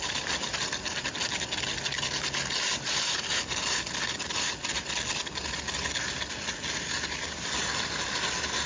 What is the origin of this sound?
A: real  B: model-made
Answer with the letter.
A